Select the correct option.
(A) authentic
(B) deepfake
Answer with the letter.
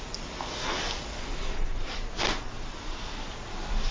A